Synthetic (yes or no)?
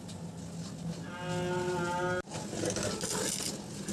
no